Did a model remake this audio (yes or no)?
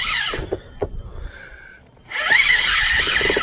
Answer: no